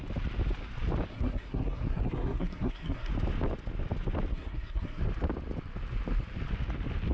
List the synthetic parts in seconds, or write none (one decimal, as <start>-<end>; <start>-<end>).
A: 1.1-3.1; 4.3-5.0